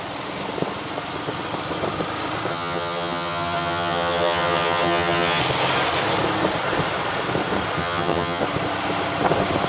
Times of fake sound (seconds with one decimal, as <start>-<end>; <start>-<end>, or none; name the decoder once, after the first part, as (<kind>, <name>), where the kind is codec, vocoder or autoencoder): 2.5-5.4 (vocoder, HiFi-GAN); 7.8-8.4